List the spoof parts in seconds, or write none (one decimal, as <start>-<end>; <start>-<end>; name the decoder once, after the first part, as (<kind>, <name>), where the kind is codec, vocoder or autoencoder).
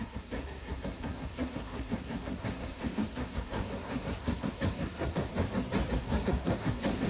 0.0-5.3 (codec, SNAC); 6.0-7.1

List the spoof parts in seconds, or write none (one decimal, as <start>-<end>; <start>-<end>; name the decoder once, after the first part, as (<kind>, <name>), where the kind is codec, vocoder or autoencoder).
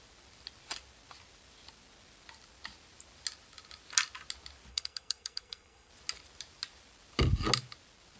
4.7-5.9 (codec, SNAC)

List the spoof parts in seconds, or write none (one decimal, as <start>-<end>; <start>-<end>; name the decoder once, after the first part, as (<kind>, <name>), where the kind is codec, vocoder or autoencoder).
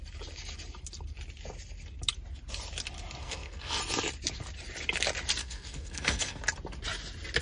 3.2-3.8 (codec, SNAC); 5.4-6.4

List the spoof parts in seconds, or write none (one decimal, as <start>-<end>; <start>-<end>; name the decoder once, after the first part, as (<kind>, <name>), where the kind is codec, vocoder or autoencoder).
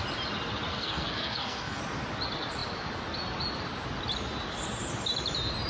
0.7-1.8 (codec, SNAC)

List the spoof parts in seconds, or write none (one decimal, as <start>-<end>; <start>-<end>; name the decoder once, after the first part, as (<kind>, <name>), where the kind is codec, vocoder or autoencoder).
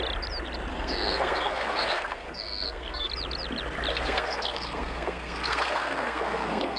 0.7-3.1 (codec, SNAC); 3.9-6.8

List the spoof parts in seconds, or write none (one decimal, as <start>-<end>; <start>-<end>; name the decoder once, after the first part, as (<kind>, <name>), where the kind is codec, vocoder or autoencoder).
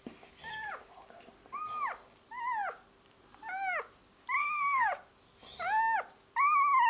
4.4-4.9 (codec, SNAC)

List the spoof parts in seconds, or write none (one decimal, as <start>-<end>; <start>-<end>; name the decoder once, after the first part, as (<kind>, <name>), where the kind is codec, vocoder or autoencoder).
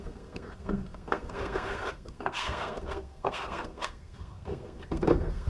0.0-5.5 (codec, SNAC)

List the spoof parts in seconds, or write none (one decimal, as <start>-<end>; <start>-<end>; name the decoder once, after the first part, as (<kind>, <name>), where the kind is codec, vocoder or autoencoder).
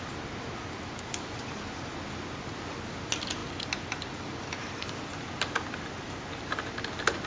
none